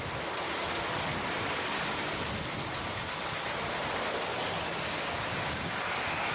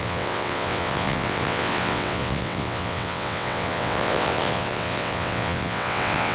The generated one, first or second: second